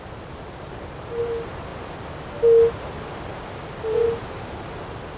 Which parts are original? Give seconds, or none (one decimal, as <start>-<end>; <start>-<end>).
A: 0.0-5.2